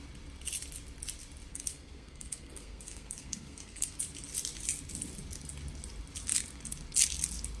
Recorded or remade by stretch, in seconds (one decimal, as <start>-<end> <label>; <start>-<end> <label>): 0.0-1.5 recorded; 1.5-4.0 remade; 4.0-7.6 recorded